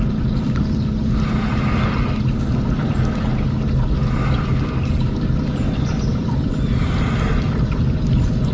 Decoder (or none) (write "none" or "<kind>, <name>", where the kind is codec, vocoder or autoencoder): none